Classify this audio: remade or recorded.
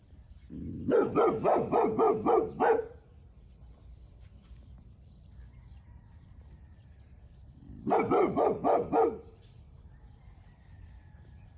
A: remade